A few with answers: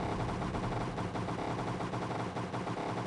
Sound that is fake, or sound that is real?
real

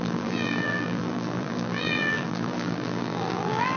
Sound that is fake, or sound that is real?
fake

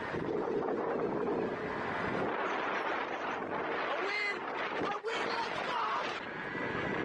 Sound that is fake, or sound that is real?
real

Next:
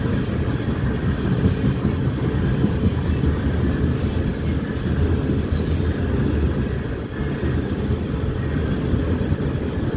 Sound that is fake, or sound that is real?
real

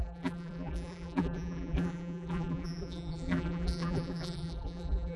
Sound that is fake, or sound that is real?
fake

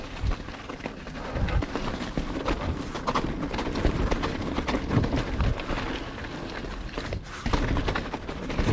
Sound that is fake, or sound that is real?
real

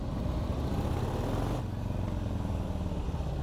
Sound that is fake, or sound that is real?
real